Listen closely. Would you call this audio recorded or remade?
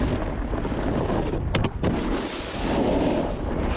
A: recorded